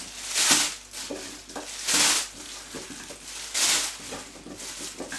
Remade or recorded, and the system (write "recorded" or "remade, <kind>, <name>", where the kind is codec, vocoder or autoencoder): recorded